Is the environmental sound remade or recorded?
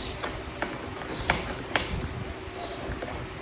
recorded